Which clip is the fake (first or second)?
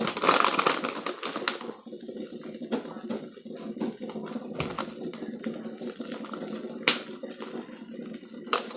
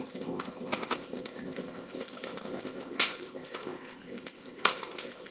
second